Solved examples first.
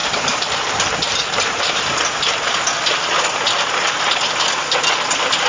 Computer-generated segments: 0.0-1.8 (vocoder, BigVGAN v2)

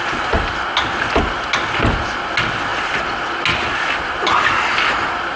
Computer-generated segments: none

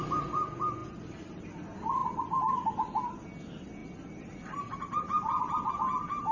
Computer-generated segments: 3.8-5.7 (vocoder, BigVGAN v2)